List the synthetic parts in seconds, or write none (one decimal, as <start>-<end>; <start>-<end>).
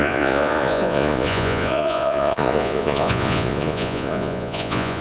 0.0-5.0